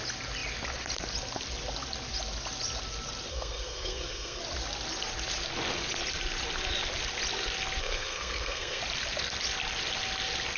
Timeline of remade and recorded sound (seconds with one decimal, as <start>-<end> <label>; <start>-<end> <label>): 0.0-3.3 recorded; 3.3-4.4 remade; 4.4-7.8 recorded; 7.8-8.8 remade; 8.8-10.6 recorded